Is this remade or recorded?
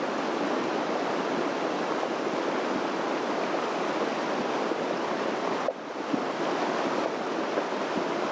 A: recorded